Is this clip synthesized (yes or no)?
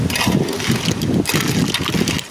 no